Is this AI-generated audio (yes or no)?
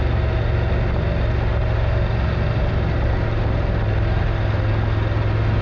no